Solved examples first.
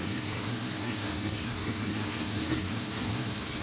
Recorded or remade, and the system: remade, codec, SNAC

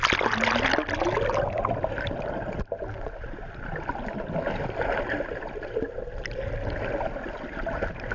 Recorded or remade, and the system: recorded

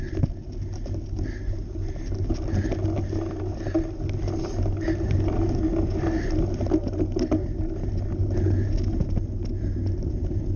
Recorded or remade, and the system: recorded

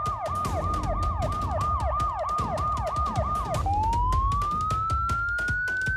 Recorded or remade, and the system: recorded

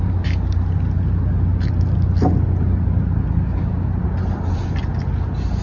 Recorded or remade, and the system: recorded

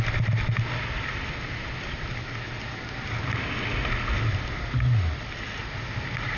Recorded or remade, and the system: recorded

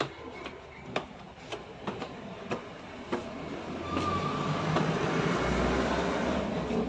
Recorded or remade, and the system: recorded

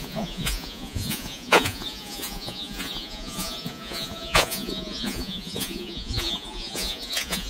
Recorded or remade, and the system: remade, vocoder, Vocos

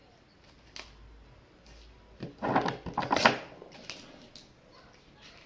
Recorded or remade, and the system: recorded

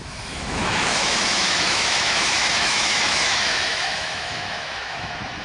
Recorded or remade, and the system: remade, autoencoder, DAC-VAE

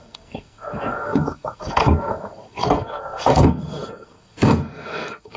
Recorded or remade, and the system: remade, codec, SNAC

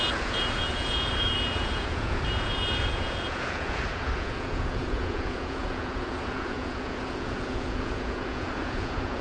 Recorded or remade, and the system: remade, vocoder, Vocos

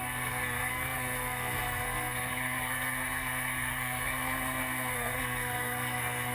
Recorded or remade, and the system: remade, codec, SNAC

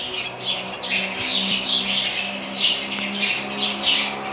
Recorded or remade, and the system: recorded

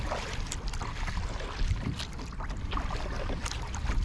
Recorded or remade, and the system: recorded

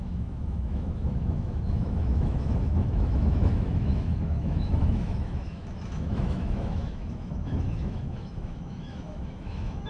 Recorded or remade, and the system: remade, autoencoder, DAC-VAE